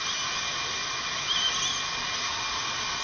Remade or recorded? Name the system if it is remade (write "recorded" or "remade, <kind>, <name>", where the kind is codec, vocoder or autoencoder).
recorded